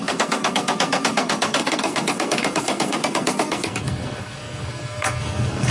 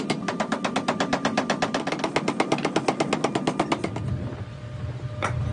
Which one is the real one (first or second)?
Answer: second